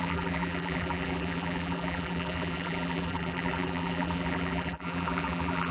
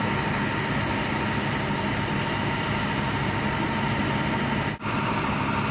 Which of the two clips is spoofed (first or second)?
first